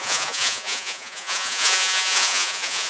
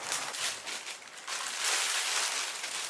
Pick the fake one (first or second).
first